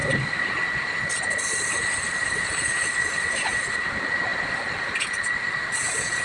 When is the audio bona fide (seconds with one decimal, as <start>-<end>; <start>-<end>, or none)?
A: 0.0-6.2